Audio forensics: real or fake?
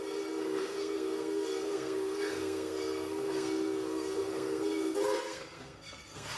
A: fake